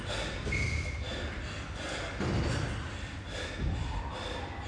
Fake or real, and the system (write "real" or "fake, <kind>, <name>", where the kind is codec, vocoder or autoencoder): real